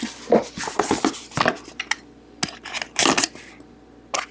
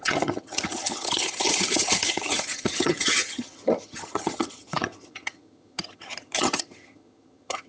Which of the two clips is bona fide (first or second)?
first